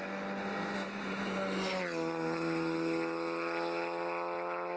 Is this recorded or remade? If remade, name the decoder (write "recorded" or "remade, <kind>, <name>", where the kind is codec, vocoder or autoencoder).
recorded